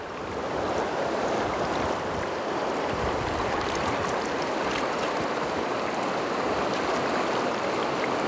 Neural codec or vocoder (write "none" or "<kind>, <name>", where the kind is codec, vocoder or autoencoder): vocoder, BigVGAN v2